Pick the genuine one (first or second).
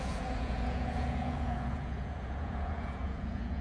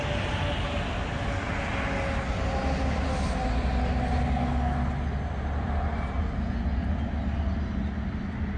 second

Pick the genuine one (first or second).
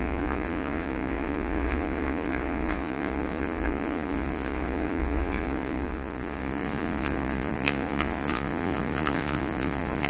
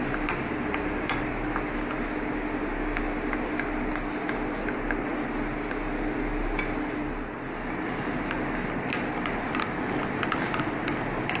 second